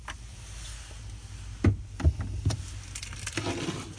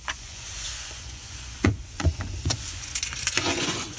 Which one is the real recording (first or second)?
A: first